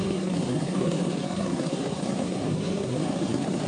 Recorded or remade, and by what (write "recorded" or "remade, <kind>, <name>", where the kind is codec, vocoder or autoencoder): remade, codec, SNAC